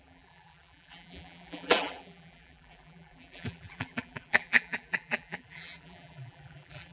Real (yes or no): no